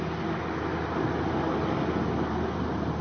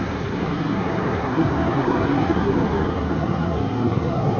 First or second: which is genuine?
first